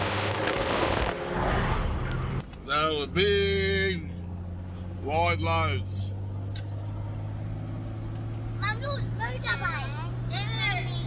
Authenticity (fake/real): real